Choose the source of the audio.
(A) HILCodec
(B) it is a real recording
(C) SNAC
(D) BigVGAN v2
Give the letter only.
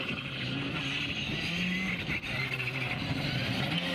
B